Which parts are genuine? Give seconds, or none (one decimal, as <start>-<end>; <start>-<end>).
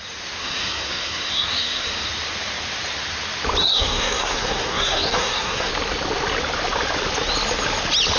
0.0-0.4; 2.1-3.6; 5.7-8.2